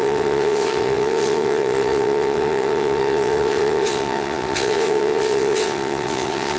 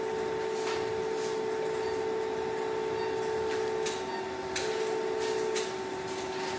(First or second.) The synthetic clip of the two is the first